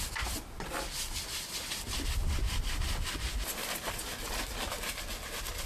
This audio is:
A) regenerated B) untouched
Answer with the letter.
B